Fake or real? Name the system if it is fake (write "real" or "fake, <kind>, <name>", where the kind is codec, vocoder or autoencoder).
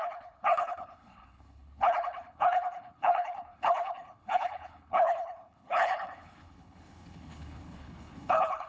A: fake, codec, HILCodec